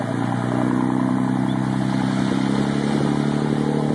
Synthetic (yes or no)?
no